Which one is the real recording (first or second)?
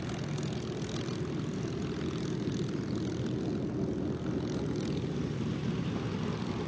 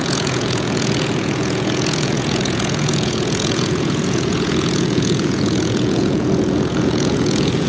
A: first